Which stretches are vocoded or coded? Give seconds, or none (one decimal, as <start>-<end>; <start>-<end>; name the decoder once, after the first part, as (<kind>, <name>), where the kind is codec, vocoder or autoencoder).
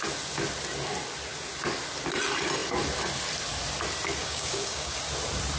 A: 4.2-5.0 (codec, DAC)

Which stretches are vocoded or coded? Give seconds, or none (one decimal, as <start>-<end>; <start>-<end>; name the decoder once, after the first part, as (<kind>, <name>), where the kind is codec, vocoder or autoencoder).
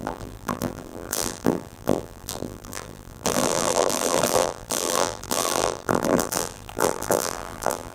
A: 0.0-7.9 (vocoder, BigVGAN v2)